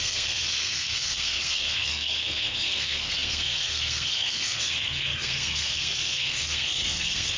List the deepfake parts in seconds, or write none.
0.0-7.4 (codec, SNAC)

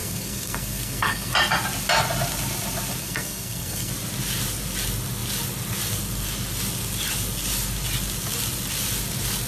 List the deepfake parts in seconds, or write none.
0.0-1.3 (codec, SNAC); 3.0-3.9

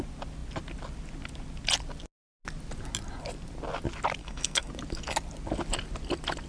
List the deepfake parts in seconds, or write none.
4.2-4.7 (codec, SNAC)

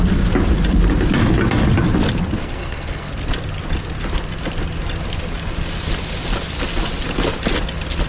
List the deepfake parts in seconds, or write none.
2.4-3.1 (codec, SNAC)